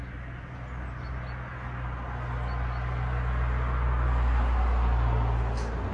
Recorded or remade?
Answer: recorded